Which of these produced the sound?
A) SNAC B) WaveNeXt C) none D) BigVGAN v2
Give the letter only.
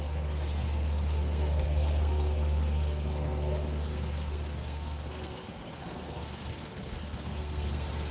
A